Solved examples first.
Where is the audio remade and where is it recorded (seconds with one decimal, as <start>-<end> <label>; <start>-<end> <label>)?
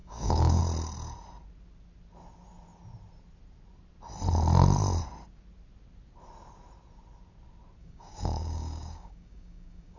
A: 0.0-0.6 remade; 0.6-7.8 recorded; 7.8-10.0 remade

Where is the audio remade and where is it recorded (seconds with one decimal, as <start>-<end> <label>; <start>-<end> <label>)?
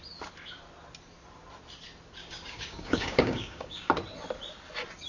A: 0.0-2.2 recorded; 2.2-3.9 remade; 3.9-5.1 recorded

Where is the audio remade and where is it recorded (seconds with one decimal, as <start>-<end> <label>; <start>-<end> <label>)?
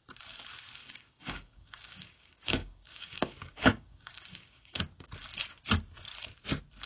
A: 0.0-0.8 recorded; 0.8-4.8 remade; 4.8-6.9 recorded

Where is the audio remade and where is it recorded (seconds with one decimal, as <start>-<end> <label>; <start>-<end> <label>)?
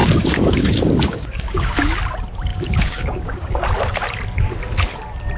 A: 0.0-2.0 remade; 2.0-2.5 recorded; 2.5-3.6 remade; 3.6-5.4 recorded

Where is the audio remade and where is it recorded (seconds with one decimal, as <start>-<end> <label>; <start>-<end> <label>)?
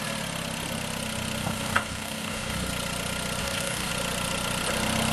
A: 0.0-1.4 recorded; 1.4-2.7 remade; 2.7-3.4 recorded; 3.4-3.9 remade; 3.9-5.1 recorded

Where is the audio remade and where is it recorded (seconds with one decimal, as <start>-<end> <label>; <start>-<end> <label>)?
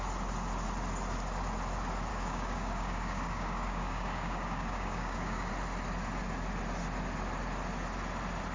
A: 0.0-2.1 recorded; 2.1-5.5 remade; 5.5-8.5 recorded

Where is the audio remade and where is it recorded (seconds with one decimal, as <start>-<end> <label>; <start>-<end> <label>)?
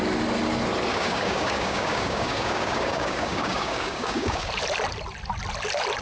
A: 0.0-0.9 recorded; 0.9-4.5 remade; 4.5-6.0 recorded